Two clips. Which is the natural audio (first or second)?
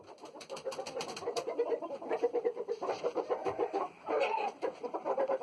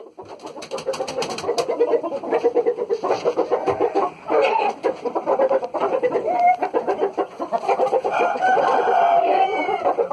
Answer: second